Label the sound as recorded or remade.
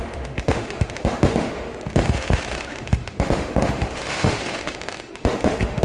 remade